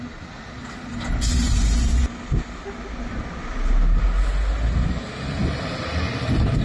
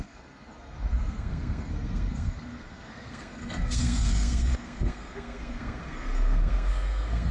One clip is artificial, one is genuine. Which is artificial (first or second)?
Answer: second